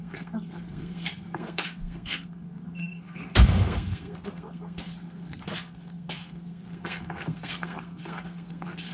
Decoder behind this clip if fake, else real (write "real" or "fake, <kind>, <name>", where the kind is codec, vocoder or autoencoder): fake, codec, SNAC